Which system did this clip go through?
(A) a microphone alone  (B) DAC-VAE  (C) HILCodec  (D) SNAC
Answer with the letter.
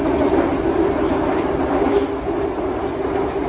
A